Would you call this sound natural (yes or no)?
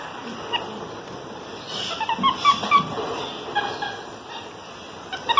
yes